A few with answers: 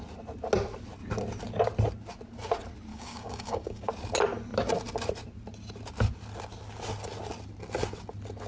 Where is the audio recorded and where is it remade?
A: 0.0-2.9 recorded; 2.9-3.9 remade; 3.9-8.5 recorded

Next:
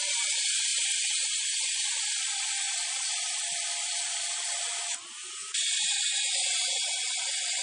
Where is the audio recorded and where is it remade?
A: 0.0-7.6 recorded

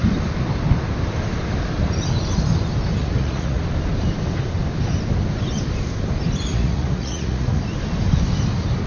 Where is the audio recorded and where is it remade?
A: 0.0-3.0 recorded; 3.0-3.6 remade; 3.6-6.5 recorded; 6.5-7.6 remade; 7.6-8.9 recorded

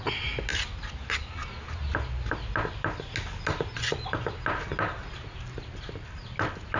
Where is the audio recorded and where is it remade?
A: 0.0-6.8 recorded

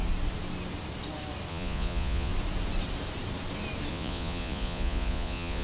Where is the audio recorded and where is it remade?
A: 0.0-1.5 recorded; 1.5-2.3 remade; 2.3-3.9 recorded; 3.9-5.6 remade